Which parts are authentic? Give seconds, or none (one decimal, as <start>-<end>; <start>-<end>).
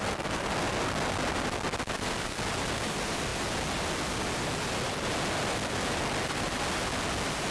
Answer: 0.0-7.5